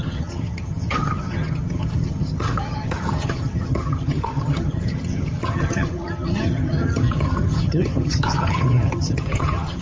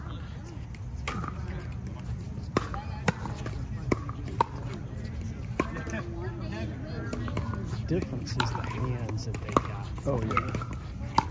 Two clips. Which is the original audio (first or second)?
second